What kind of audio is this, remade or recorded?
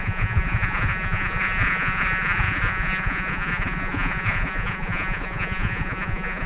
remade